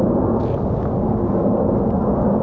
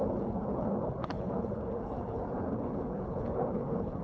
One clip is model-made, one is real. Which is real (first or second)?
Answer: first